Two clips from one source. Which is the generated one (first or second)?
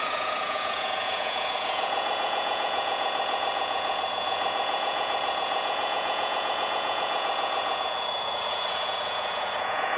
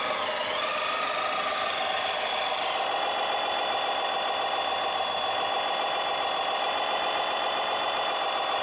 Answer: first